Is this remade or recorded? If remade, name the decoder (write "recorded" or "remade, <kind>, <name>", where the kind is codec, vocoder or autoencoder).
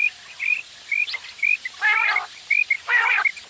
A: recorded